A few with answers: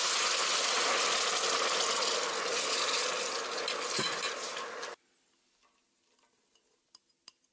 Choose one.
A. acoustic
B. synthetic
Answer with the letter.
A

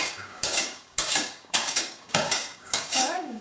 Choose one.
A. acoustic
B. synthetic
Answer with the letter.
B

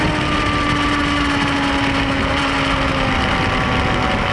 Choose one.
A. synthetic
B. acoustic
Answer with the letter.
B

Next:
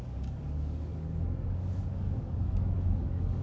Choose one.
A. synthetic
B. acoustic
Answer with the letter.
A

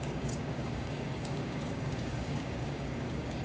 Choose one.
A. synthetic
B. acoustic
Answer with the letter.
A